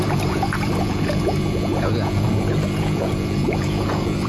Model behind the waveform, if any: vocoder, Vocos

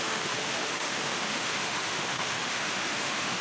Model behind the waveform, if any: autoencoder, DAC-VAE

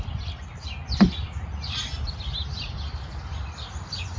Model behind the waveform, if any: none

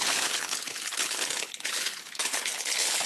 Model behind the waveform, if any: codec, HILCodec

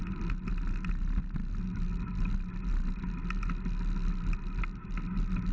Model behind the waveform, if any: none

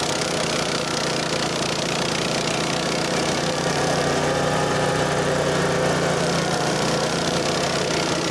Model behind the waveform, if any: vocoder, BigVGAN v2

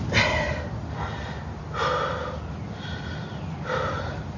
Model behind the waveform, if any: none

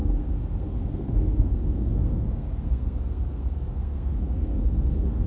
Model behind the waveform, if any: codec, SNAC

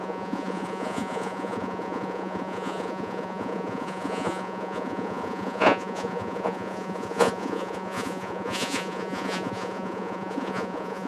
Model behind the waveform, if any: vocoder, Vocos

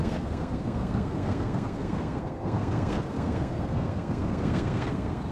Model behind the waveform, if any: codec, SNAC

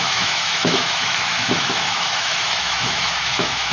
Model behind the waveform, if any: autoencoder, DAC-VAE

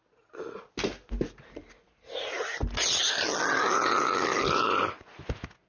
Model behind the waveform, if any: none